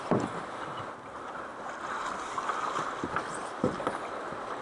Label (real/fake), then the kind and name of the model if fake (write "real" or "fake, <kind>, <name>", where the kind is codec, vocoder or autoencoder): real